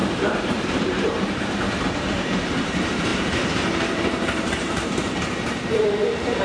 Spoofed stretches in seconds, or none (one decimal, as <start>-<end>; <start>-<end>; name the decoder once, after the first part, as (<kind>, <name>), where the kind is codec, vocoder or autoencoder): 0.0-6.4 (vocoder, BigVGAN v2)